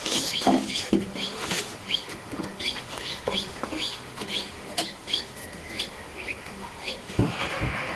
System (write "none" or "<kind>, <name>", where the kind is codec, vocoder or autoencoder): autoencoder, DAC-VAE